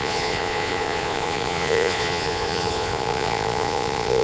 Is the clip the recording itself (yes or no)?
no